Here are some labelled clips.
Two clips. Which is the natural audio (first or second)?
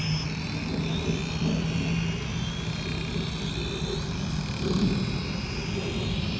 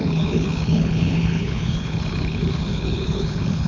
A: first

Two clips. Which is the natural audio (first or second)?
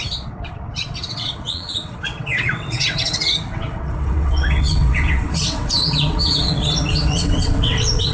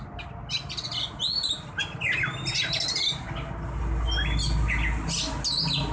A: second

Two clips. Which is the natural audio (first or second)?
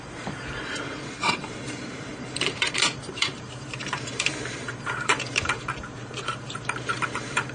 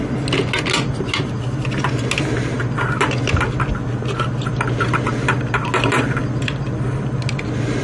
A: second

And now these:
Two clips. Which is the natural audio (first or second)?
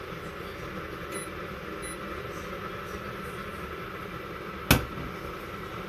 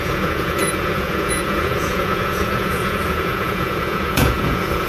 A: first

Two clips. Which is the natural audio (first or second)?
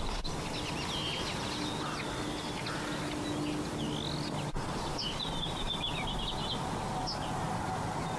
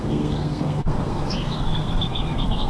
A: first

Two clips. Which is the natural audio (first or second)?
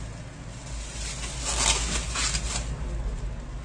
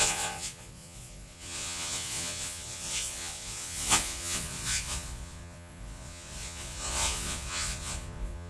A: first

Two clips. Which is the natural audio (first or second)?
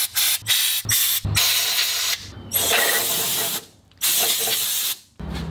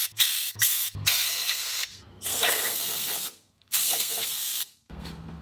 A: first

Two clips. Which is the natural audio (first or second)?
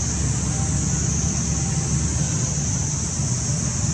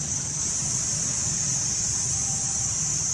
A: first